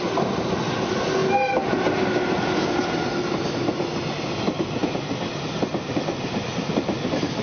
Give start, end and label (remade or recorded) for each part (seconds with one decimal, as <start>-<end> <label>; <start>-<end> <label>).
0.0-7.4 recorded

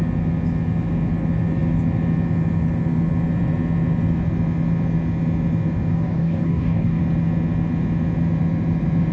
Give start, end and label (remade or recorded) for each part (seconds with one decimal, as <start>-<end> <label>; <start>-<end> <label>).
0.0-5.9 recorded; 5.9-7.0 remade; 7.0-9.1 recorded

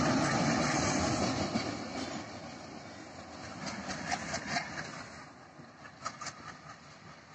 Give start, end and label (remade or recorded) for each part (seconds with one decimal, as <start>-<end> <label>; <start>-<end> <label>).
0.0-7.3 recorded

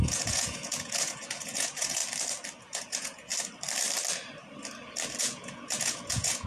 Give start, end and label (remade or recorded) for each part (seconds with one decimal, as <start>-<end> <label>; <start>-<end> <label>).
0.0-2.0 remade; 2.0-2.6 recorded; 2.6-3.3 remade; 3.3-5.2 recorded; 5.2-6.5 remade

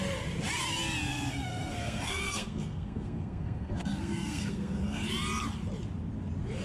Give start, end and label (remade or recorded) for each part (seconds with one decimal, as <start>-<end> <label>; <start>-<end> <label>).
0.0-1.1 recorded; 1.1-5.1 remade; 5.1-6.6 recorded

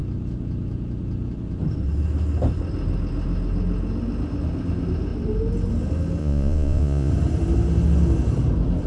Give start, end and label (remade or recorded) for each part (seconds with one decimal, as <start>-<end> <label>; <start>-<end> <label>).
0.0-6.2 recorded; 6.2-7.1 remade; 7.1-8.9 recorded

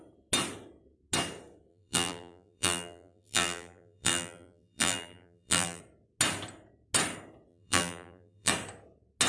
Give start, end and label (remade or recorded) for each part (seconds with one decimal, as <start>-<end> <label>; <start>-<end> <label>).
0.0-1.7 recorded; 1.7-5.8 remade; 5.8-7.5 recorded; 7.5-8.5 remade; 8.5-9.3 recorded